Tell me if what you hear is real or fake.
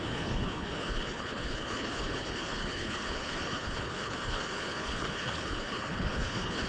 fake